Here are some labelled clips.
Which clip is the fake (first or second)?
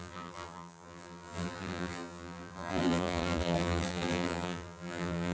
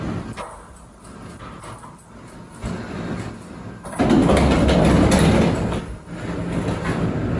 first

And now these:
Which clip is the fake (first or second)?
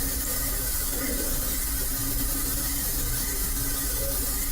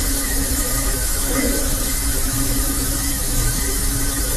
second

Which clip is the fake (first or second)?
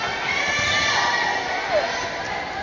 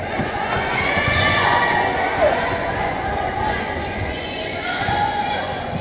second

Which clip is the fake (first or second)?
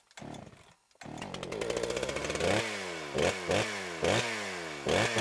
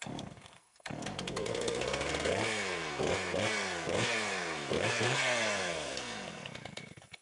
second